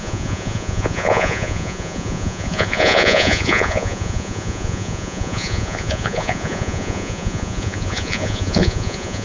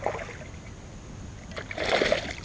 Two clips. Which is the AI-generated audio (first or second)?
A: first